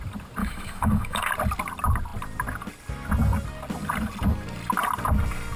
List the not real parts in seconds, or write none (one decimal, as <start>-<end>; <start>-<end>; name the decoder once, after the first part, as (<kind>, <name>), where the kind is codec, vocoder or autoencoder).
0.4-1.3 (autoencoder, DAC-VAE)